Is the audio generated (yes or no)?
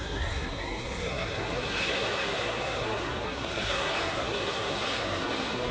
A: yes